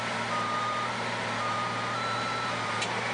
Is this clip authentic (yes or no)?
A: no